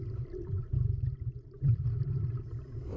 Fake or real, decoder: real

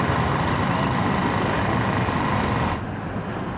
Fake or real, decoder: real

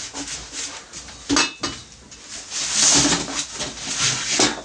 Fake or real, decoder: real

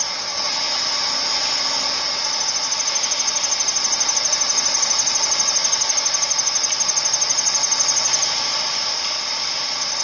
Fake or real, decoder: real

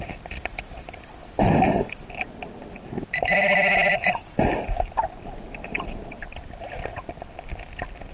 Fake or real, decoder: fake, vocoder, BigVGAN v2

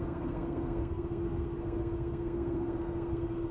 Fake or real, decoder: fake, codec, SNAC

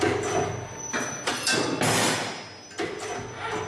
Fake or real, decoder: real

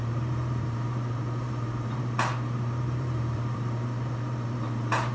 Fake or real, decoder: fake, vocoder, BigVGAN v2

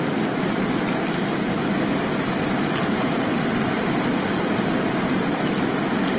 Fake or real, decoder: real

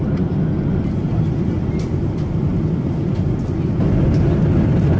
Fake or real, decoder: real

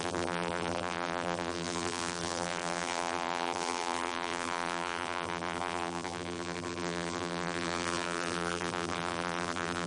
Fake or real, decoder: fake, vocoder, BigVGAN v2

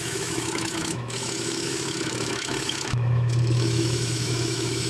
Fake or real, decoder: fake, autoencoder, DAC-VAE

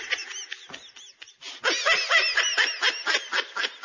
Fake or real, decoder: real